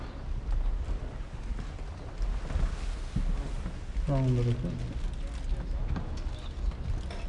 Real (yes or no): yes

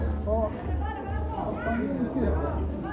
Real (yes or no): yes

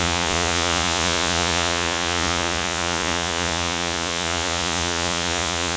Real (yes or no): no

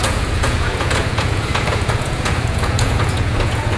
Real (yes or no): no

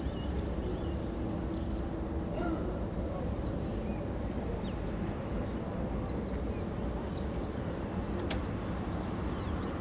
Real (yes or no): yes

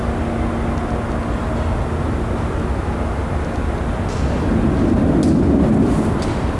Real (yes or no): yes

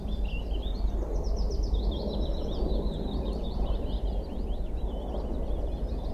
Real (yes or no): yes